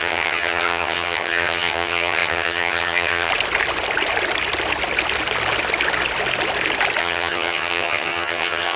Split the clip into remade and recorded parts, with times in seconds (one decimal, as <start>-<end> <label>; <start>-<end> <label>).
0.0-3.3 remade; 3.3-7.0 recorded; 7.0-8.8 remade

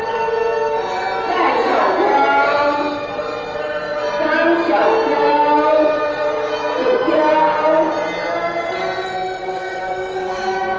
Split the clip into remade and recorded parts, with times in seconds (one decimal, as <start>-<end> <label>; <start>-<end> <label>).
0.0-9.4 recorded; 9.4-10.8 remade

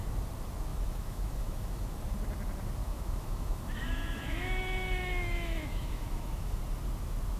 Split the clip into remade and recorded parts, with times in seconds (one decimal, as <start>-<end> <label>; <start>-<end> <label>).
0.0-0.7 recorded; 0.7-1.9 remade; 1.9-2.8 recorded; 2.8-6.6 remade; 6.6-7.4 recorded